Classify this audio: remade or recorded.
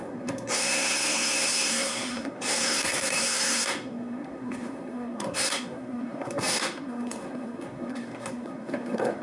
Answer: remade